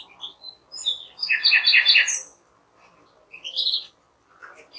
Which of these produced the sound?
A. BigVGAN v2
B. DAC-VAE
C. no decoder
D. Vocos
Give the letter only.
C